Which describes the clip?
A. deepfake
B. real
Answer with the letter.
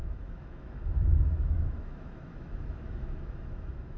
A